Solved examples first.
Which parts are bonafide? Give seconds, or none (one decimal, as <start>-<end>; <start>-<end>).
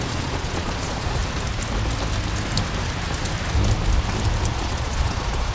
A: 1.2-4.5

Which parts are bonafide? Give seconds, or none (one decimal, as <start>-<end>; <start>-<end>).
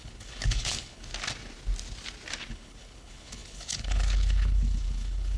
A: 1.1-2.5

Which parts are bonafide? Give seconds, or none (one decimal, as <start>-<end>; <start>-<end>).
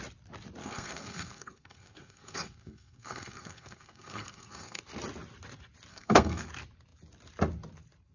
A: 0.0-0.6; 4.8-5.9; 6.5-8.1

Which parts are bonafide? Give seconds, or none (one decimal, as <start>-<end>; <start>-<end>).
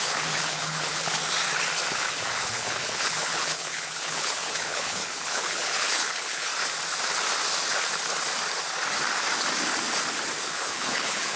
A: 1.2-1.9; 6.5-10.5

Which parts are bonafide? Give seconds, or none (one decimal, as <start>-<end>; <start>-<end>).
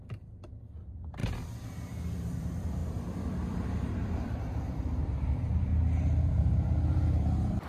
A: 1.2-2.3; 5.7-6.3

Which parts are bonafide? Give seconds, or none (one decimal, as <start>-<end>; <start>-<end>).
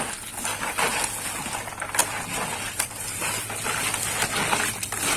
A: 0.0-2.0